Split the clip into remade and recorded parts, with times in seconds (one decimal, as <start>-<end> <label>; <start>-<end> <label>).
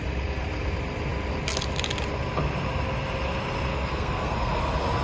0.0-3.7 recorded; 3.7-4.6 remade; 4.6-5.0 recorded